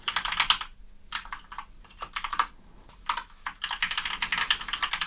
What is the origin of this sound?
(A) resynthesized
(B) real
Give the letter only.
B